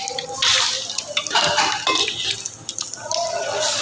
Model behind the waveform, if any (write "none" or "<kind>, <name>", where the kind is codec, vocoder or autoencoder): none